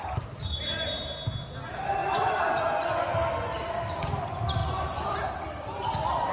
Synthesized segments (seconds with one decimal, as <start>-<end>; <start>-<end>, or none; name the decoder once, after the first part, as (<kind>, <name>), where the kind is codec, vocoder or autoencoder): 2.0-2.5 (vocoder, Vocos)